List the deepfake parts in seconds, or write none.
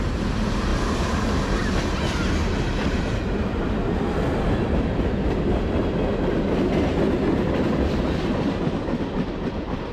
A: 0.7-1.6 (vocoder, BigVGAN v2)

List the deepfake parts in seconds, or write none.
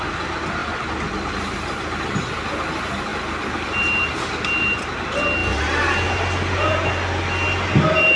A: none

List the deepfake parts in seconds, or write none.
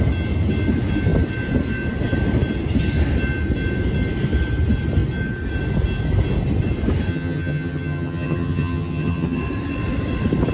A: 7.1-9.4 (vocoder, HiFi-GAN)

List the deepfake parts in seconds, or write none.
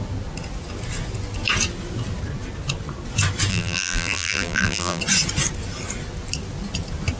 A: 3.5-5.0 (vocoder, BigVGAN v2)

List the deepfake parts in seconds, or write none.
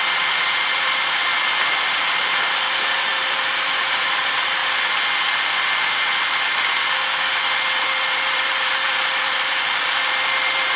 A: 0.0-1.2 (vocoder, BigVGAN v2); 2.0-4.6; 7.4-10.8